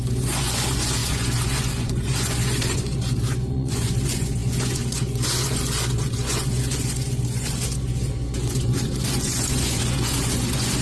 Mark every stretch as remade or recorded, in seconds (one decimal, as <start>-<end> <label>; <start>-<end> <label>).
0.0-10.8 remade